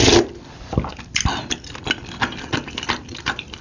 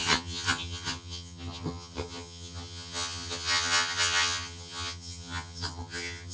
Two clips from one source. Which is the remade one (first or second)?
second